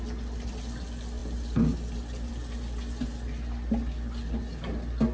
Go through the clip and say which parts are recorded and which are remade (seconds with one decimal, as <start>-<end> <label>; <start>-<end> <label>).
0.0-5.1 recorded